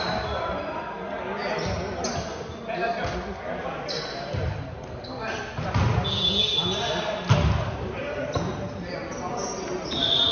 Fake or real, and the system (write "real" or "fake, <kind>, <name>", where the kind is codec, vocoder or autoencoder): real